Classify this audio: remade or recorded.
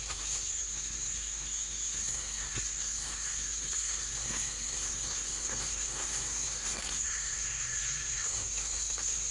remade